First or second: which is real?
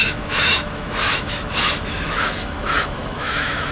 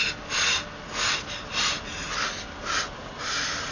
second